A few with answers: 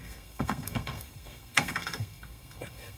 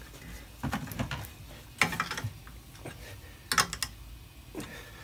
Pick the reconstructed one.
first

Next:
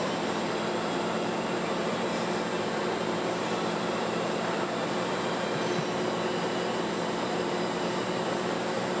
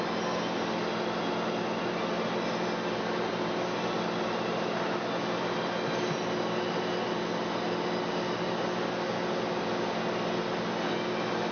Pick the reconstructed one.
first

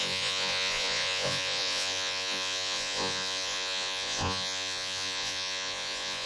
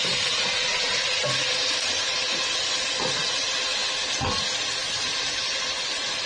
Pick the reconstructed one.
first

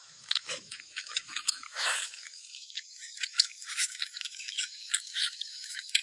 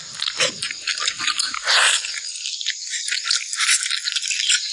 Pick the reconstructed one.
first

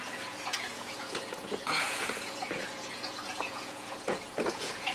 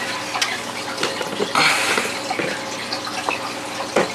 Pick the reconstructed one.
first